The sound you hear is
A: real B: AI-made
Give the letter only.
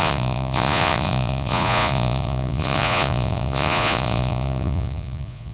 B